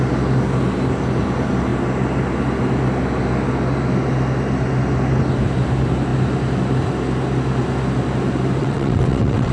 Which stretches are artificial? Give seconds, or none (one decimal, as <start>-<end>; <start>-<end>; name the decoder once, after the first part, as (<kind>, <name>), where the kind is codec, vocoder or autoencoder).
8.6-9.5 (vocoder, WaveNeXt)